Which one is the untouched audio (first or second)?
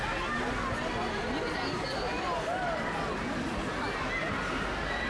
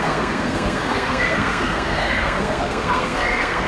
first